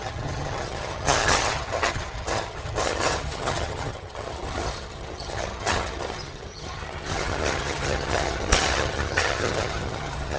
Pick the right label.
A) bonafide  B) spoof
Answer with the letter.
B